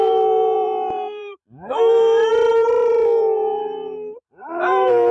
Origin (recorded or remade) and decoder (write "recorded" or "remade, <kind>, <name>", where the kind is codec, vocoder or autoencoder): remade, vocoder, BigVGAN v2